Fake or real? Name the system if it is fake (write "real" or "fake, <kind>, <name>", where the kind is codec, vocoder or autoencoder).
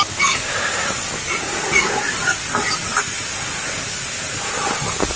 real